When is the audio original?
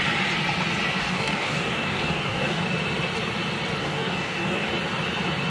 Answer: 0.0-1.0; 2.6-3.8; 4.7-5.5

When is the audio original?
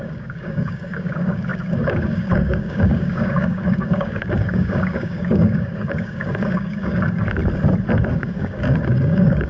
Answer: 7.4-8.1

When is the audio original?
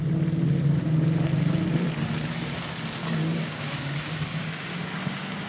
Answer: 0.0-3.0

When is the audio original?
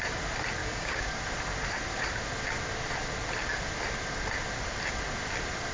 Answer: 0.0-0.6; 1.1-5.7